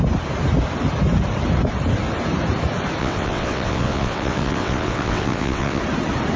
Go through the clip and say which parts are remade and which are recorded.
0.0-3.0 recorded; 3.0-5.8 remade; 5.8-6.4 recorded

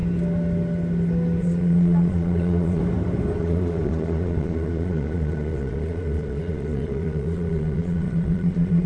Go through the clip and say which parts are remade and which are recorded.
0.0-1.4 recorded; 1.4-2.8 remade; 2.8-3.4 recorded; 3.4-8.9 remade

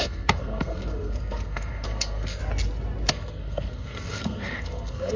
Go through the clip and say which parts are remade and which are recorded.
0.0-2.4 remade; 2.4-3.1 recorded; 3.1-5.2 remade

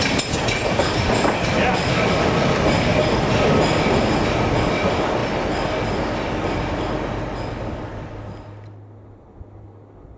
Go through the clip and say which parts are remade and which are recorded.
0.0-10.2 recorded

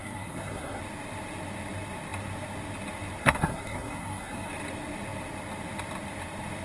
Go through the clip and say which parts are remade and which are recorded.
0.0-0.8 remade; 0.8-3.2 recorded; 3.2-4.5 remade; 4.5-6.6 recorded